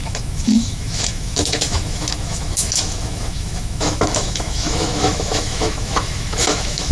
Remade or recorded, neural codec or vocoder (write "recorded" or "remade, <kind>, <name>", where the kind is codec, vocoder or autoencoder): remade, autoencoder, DAC-VAE